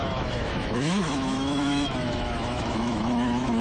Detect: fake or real fake